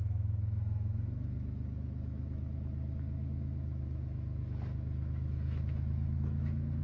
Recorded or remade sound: remade